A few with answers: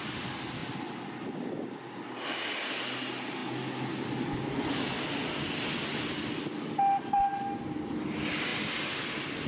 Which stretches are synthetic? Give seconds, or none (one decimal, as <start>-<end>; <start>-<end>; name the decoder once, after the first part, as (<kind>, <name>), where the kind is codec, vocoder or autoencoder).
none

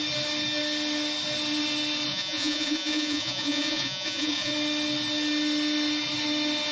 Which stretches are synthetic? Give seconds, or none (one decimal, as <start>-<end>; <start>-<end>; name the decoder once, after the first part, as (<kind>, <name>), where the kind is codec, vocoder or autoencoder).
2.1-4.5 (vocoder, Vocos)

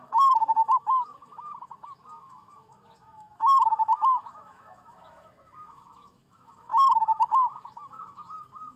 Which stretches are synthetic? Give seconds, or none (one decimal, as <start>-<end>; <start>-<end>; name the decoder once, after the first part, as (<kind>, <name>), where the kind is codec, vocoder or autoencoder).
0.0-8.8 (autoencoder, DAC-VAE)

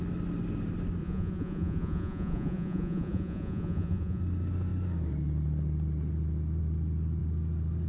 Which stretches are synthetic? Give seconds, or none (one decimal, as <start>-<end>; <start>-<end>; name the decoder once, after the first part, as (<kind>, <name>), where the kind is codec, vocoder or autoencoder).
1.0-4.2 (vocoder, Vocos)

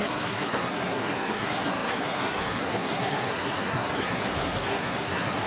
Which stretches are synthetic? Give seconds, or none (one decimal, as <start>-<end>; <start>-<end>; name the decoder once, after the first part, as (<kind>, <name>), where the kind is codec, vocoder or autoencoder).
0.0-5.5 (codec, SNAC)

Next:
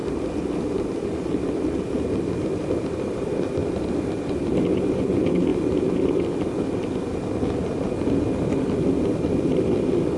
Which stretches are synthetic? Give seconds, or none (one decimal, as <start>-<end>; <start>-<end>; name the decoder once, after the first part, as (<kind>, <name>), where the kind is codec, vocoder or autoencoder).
0.0-5.5 (vocoder, BigVGAN v2); 8.2-10.2

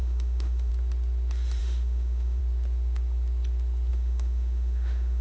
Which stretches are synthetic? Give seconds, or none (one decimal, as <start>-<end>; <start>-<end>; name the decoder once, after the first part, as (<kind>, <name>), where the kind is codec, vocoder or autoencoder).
0.0-0.7 (autoencoder, DAC-VAE); 1.6-2.4; 3.9-5.2